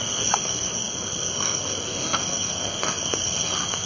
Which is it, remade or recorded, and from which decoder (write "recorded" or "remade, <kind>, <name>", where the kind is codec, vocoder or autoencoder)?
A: remade, codec, SNAC